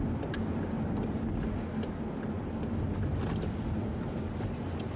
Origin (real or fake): real